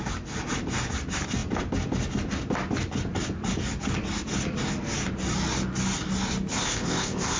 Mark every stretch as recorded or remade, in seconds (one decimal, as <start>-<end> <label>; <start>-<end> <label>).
0.0-6.5 recorded; 6.5-7.4 remade